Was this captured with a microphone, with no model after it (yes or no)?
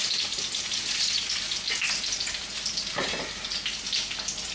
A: yes